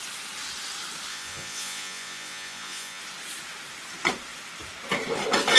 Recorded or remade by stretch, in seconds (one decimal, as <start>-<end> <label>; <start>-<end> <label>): 0.0-1.1 recorded; 1.1-3.0 remade; 3.0-5.6 recorded